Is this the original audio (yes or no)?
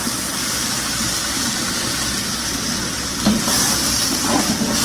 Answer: yes